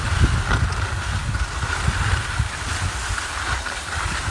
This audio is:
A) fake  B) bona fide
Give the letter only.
B